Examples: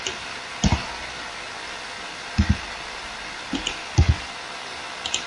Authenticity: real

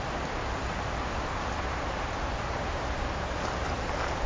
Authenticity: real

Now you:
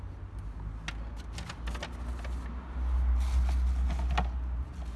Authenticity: real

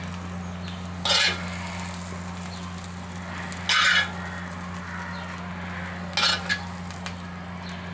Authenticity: real